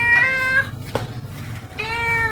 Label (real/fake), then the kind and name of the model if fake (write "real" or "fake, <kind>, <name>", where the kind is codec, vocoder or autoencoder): real